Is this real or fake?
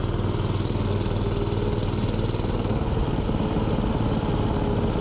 real